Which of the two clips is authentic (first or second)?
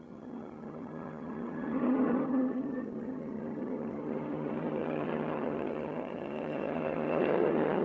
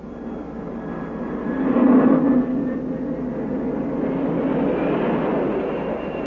second